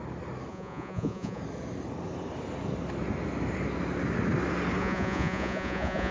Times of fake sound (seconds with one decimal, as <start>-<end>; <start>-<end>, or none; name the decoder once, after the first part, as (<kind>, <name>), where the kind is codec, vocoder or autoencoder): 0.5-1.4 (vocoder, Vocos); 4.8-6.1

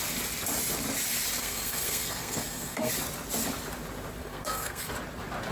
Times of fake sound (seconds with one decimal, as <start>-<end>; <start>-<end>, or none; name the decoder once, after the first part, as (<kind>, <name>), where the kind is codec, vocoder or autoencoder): 1.4-2.9 (codec, SNAC); 4.2-4.9

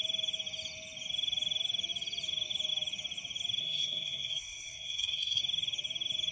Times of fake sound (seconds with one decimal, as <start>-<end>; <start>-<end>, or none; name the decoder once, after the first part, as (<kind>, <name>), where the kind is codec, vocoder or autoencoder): 3.6-5.4 (codec, SNAC)

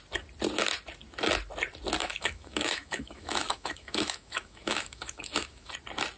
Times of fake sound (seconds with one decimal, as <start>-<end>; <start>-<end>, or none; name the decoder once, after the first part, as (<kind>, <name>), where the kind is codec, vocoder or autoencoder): 2.0-5.7 (autoencoder, DAC-VAE)

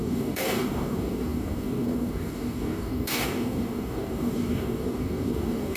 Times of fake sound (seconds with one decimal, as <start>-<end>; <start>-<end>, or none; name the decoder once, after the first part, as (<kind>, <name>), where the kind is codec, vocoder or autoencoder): 0.0-5.8 (codec, DAC)

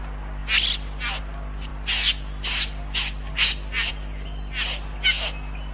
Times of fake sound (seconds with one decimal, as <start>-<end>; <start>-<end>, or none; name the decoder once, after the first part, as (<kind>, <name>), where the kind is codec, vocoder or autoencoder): none

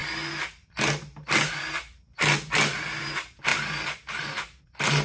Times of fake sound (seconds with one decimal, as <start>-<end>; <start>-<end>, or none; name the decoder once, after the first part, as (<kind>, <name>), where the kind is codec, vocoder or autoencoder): none

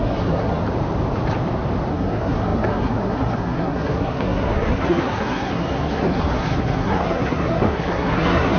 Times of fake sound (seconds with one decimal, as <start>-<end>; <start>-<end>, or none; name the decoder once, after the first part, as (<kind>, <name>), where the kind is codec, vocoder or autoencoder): 0.0-0.6 (codec, SNAC); 1.9-8.6